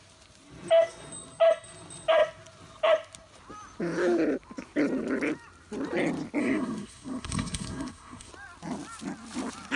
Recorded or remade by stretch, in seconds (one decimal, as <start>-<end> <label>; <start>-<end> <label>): 0.0-6.4 recorded; 6.4-8.3 remade; 8.3-9.8 recorded